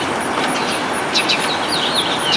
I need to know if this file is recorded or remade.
remade